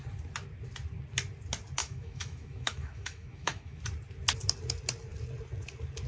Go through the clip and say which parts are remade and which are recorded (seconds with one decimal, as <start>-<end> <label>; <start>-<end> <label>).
0.0-1.8 recorded; 1.8-3.8 remade; 3.8-6.1 recorded